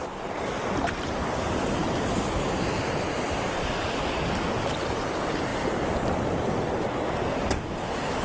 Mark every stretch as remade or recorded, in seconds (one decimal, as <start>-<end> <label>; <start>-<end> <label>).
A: 0.0-8.2 recorded